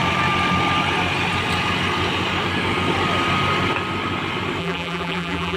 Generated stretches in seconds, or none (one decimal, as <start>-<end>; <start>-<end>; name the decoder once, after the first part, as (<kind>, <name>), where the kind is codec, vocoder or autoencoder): 4.6-5.6 (vocoder, BigVGAN v2)